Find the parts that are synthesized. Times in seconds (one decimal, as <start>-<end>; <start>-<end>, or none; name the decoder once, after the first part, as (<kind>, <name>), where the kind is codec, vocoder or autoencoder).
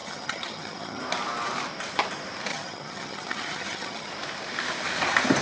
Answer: 0.0-1.0 (vocoder, HiFi-GAN); 2.5-4.1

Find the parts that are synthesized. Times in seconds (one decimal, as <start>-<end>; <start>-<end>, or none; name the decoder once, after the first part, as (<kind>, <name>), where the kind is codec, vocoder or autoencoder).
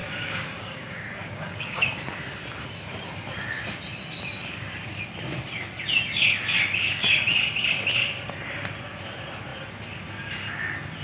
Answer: 0.0-2.0 (codec, DAC)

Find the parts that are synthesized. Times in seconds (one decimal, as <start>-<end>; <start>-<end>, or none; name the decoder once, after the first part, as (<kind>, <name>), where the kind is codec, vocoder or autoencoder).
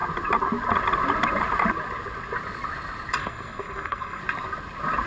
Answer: 3.2-4.2 (codec, SNAC)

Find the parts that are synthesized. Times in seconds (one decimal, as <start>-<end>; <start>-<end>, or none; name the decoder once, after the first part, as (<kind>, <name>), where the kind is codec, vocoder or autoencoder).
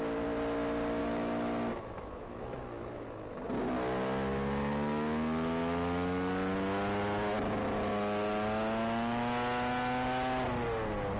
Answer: 1.0-3.4 (autoencoder, DAC-VAE)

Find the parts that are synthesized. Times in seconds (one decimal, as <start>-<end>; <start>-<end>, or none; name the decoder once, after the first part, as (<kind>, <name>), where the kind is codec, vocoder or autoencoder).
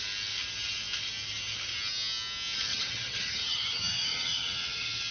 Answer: 2.7-5.1 (vocoder, HiFi-GAN)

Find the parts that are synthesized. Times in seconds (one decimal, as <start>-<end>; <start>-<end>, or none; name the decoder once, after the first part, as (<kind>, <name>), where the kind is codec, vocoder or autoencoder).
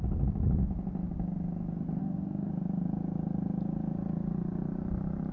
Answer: 2.0-2.5 (autoencoder, DAC-VAE)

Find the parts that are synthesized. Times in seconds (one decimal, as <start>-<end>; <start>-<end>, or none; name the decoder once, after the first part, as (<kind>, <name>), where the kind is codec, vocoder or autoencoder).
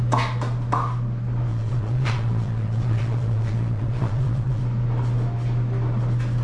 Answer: 1.5-4.6 (vocoder, Vocos)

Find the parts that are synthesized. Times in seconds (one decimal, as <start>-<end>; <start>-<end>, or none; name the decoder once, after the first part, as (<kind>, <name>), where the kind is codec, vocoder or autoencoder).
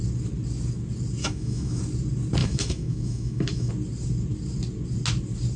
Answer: 1.2-1.8 (autoencoder, DAC-VAE); 2.4-3.7